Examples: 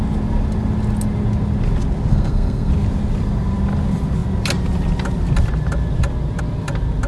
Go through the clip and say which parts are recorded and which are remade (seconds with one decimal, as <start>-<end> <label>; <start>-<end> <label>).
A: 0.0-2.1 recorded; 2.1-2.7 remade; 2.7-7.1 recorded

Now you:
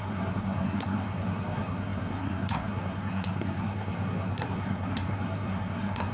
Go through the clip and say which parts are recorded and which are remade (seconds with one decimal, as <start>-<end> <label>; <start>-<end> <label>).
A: 0.0-6.1 remade

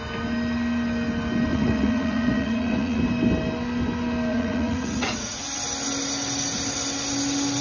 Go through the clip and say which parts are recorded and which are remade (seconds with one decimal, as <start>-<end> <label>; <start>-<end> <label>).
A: 0.0-1.5 recorded; 1.5-3.0 remade; 3.0-4.3 recorded; 4.3-5.4 remade; 5.4-7.6 recorded

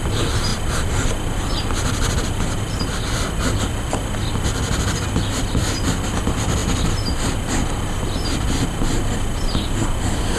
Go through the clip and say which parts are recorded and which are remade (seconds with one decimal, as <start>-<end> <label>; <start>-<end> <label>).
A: 0.0-0.5 recorded; 0.5-3.3 remade; 3.3-10.4 recorded

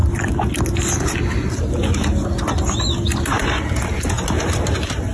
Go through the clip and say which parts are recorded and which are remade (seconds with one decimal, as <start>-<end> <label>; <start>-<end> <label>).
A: 0.0-5.1 recorded